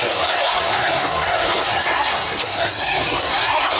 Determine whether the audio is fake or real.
fake